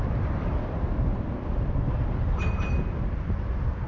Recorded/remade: recorded